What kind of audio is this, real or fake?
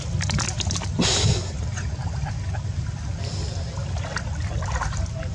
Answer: fake